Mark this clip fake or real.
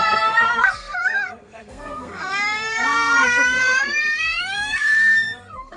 fake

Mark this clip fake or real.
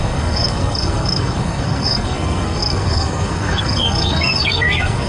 fake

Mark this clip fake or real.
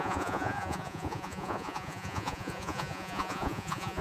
fake